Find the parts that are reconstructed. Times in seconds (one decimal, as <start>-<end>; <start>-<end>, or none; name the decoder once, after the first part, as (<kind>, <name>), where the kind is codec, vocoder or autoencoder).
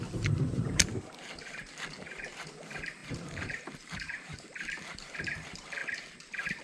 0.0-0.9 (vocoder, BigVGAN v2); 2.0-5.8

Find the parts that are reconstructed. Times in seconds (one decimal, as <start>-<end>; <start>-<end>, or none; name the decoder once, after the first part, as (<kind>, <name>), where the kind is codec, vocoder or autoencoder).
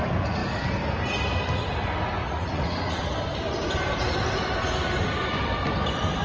2.2-3.1 (vocoder, Vocos)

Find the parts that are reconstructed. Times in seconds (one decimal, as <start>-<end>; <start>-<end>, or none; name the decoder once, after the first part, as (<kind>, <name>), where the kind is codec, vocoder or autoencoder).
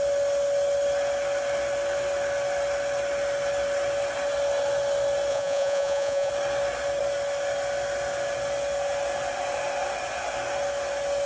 5.3-6.3 (vocoder, Vocos)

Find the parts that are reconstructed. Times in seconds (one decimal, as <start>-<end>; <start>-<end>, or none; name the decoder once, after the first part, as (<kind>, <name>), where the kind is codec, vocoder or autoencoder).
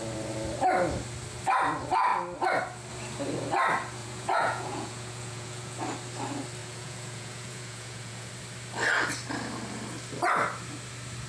4.0-5.8 (vocoder, Vocos); 6.6-8.3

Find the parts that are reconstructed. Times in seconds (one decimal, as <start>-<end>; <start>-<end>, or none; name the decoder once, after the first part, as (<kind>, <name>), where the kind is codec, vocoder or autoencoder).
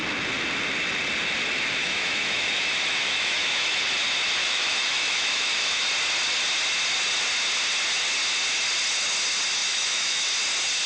1.8-3.8 (autoencoder, DAC-VAE); 4.4-5.8; 9.6-10.2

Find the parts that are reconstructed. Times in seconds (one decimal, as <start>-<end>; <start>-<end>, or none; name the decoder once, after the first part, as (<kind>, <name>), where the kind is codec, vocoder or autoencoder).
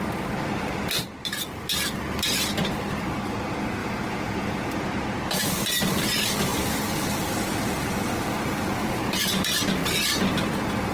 3.8-4.9 (vocoder, Vocos)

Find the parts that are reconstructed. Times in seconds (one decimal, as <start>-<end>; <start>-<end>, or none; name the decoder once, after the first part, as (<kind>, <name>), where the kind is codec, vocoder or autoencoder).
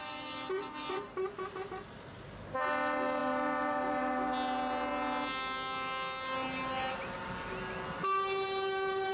none